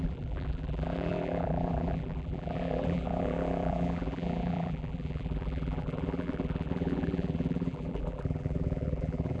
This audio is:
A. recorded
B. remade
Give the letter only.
B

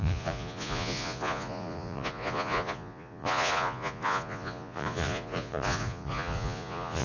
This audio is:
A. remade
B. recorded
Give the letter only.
A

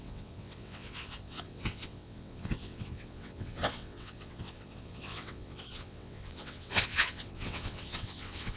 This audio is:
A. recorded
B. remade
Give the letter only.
B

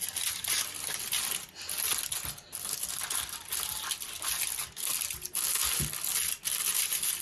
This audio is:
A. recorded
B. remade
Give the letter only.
A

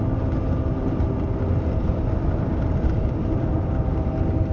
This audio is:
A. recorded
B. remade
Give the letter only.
A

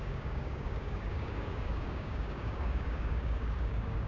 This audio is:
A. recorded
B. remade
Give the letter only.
B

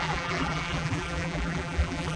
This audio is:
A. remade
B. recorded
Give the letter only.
A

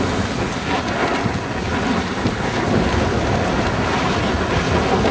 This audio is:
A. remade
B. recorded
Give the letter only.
B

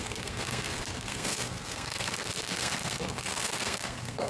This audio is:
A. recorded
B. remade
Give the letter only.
B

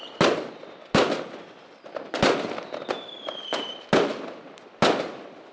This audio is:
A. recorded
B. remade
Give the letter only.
A